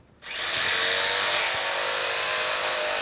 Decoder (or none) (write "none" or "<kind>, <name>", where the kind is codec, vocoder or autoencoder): none